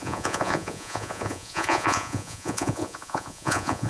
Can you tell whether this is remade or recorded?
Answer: remade